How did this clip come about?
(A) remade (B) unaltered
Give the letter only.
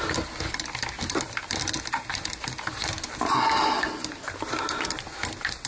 B